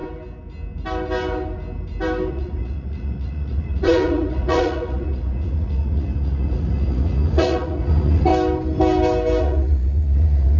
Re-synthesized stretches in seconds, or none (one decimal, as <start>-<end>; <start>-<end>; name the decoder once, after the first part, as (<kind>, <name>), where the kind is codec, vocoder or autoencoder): 2.3-8.3 (vocoder, Vocos); 9.4-10.6